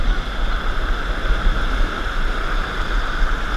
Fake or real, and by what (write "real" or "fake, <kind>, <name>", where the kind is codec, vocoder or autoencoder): real